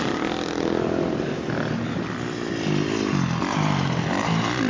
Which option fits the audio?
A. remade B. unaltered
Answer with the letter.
B